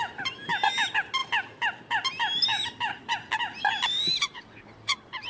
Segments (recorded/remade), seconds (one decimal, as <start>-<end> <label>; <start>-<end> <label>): 0.0-5.3 recorded